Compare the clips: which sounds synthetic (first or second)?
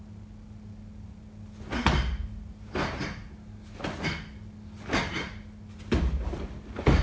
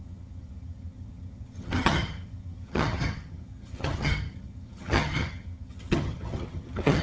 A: second